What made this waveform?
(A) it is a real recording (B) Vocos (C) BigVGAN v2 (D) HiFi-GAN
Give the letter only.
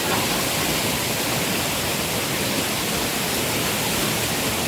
A